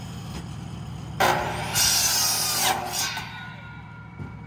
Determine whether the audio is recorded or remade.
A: recorded